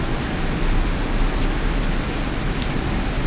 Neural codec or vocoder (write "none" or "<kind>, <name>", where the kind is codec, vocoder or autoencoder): none